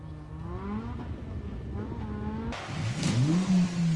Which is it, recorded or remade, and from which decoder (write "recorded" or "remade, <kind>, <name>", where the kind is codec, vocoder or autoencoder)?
recorded